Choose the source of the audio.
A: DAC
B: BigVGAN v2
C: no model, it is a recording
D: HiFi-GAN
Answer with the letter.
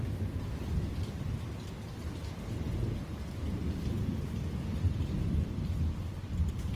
C